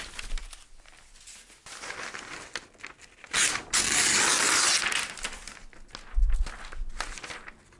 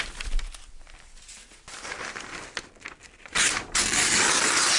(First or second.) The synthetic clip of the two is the second